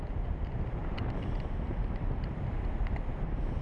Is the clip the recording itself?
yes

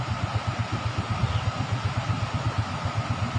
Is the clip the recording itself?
yes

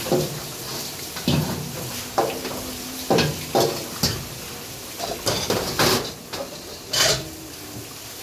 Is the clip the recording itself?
yes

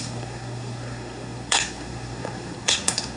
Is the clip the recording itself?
no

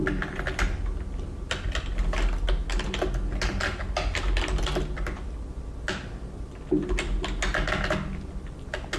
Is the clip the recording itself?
yes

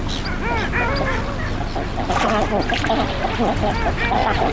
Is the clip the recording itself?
yes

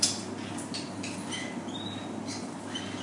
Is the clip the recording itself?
yes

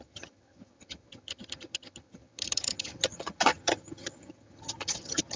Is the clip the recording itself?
no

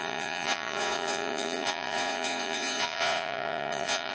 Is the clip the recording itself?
no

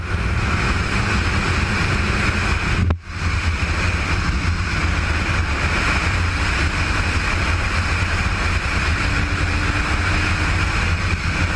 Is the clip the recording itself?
yes